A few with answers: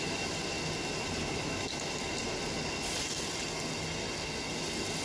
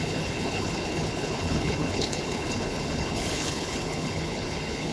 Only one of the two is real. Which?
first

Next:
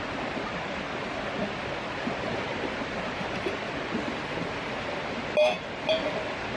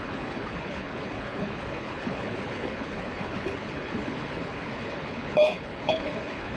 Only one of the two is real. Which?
first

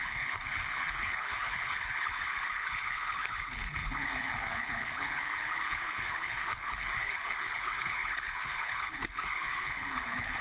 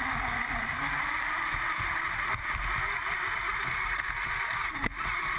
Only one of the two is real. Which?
second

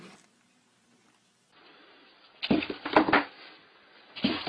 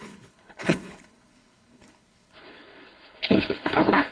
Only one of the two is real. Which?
first